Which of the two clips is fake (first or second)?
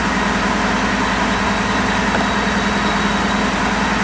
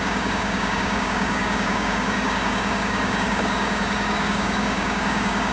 second